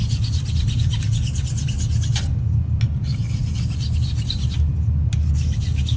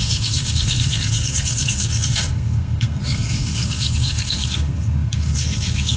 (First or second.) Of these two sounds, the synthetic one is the second